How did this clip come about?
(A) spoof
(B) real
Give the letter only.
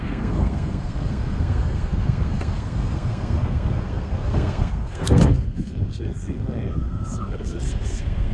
A